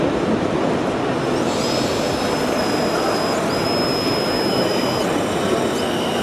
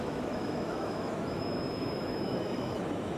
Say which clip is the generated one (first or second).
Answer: second